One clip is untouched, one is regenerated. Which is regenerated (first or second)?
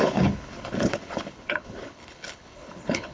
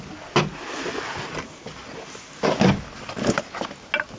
first